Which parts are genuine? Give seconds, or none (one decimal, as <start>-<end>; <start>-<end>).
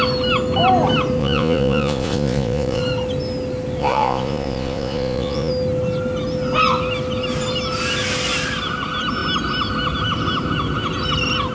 0.0-1.2; 2.8-3.8; 5.5-11.5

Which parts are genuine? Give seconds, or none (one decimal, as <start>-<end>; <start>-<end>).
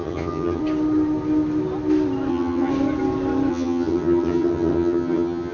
0.6-2.3; 2.7-3.5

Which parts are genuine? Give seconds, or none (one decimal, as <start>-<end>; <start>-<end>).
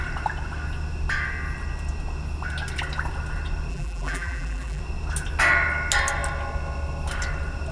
0.0-3.7; 4.8-7.7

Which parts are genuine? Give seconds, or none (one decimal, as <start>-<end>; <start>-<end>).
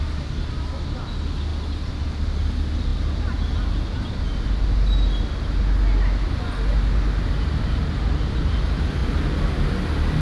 0.0-10.2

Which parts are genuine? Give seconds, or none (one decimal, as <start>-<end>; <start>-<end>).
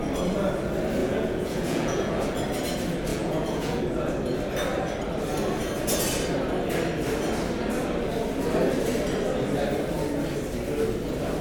0.0-1.0; 2.1-3.1; 3.8-11.4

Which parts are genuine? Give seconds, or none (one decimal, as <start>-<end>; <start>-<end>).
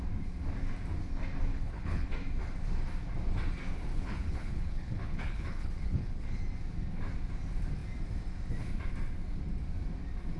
0.0-1.5; 2.1-3.9; 6.4-10.4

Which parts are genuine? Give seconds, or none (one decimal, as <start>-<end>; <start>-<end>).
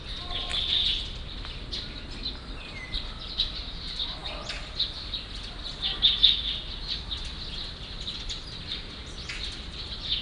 0.0-10.2